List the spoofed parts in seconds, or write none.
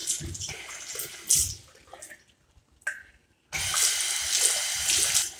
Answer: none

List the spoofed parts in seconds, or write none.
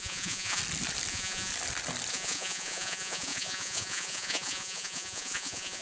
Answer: 0.0-0.6 (vocoder, Vocos); 1.1-1.5; 2.1-5.8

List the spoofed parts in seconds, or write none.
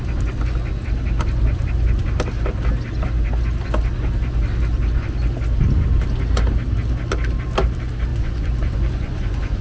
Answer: 8.1-9.6 (vocoder, Vocos)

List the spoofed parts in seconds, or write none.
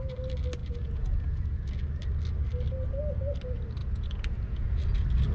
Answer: 0.6-1.7 (vocoder, Vocos); 3.8-4.8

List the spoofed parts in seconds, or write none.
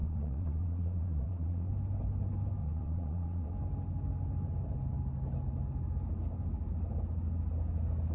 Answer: 0.0-1.7 (vocoder, Vocos); 2.6-3.5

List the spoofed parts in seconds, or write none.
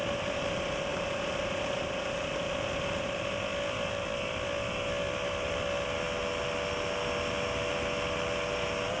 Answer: none